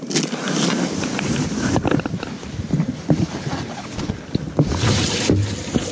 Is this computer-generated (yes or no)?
no